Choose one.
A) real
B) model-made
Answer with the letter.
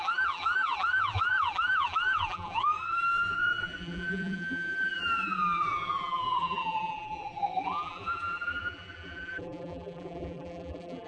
B